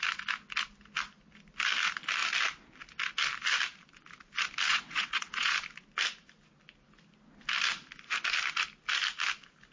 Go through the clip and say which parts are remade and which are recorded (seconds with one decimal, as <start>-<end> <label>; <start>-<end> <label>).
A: 0.0-4.7 recorded; 4.7-5.5 remade; 5.5-9.7 recorded